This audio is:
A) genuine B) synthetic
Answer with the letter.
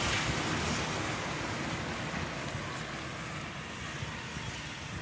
A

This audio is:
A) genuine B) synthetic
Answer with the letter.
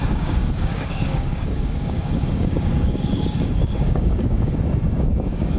B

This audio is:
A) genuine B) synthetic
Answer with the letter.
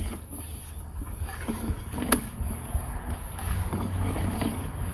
B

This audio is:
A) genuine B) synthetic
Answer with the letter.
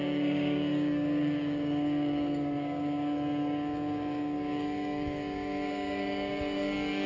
B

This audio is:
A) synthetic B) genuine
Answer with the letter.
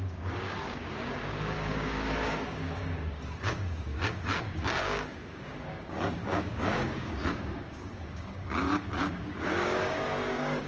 A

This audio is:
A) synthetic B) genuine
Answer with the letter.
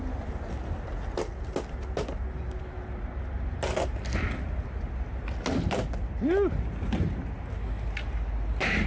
B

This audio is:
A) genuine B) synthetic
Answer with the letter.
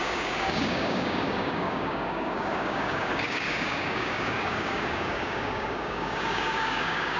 B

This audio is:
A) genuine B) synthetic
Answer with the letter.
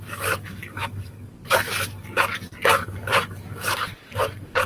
B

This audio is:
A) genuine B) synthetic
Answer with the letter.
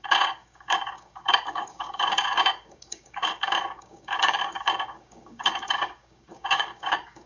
B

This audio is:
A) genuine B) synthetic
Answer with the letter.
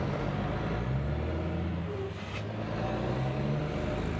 A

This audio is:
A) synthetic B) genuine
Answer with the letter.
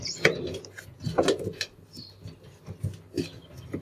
B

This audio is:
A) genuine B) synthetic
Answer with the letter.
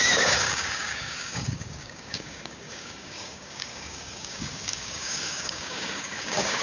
B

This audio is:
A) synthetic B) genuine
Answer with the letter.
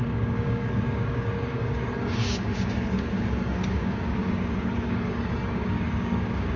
A